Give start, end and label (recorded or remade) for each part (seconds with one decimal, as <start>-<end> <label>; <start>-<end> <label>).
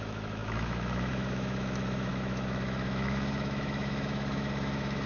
0.0-5.1 remade